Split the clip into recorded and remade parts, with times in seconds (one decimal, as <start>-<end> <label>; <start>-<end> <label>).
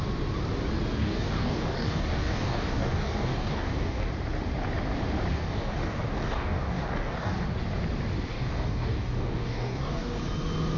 0.0-1.0 recorded; 1.0-4.1 remade; 4.1-5.3 recorded; 5.3-7.3 remade; 7.3-8.3 recorded; 8.3-10.2 remade; 10.2-10.8 recorded